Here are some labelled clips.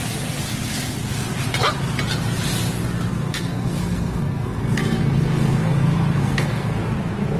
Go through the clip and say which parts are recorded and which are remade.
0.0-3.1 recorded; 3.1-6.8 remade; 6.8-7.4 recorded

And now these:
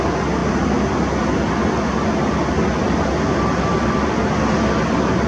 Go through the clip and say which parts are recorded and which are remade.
0.0-5.3 recorded